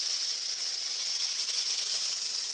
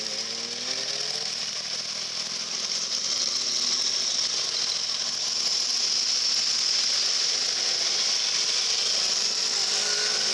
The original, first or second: second